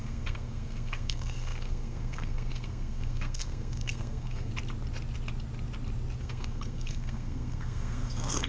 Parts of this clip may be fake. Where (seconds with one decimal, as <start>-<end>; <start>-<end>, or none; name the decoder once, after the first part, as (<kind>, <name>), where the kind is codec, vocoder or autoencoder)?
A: 0.0-4.5 (codec, SNAC); 6.2-8.5